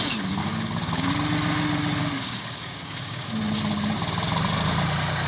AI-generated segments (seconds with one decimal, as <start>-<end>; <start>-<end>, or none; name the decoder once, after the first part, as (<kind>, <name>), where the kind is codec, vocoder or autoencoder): 0.4-1.1 (codec, DAC); 2.0-3.3